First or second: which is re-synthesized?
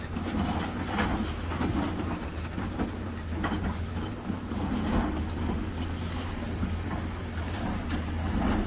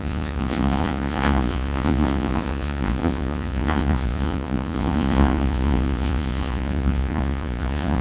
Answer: second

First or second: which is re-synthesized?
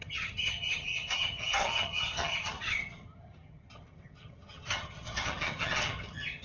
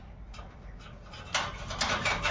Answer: first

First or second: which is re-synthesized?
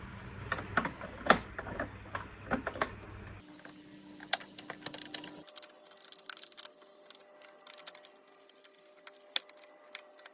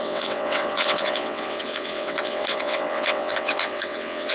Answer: second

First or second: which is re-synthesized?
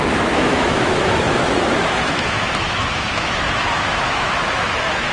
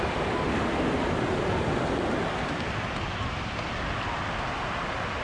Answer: first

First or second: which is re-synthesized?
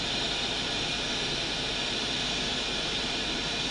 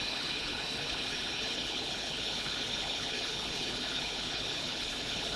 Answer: second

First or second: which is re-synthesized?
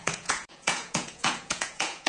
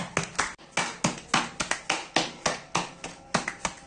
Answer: first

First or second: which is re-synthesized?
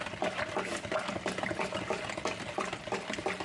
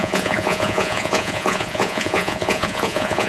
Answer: second